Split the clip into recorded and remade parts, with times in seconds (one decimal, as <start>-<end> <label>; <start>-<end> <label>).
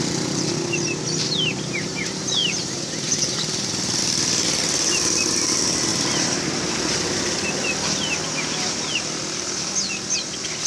0.0-2.4 recorded; 2.4-4.0 remade; 4.0-10.7 recorded